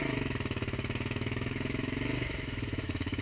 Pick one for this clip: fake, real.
fake